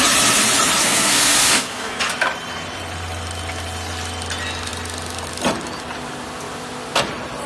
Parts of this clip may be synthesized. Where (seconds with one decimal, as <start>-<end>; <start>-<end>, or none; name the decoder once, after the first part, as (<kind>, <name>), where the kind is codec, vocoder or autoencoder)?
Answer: 0.8-2.0 (codec, SNAC)